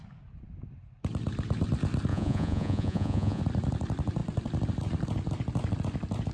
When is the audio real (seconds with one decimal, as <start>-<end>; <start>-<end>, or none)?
0.0-2.1; 3.4-6.3